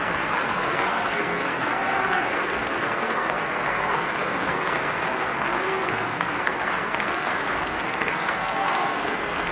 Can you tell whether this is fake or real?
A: fake